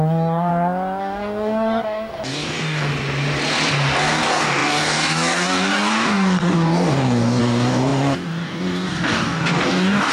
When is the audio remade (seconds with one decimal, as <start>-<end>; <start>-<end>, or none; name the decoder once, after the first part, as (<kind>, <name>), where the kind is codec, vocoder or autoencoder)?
0.0-0.5 (codec, DAC); 1.0-2.9; 4.0-10.1